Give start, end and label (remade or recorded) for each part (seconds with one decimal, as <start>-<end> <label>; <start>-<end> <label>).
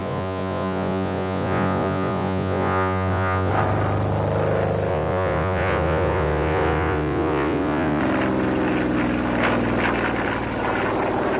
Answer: 0.0-3.5 remade; 3.5-4.9 recorded; 4.9-8.0 remade; 8.0-11.4 recorded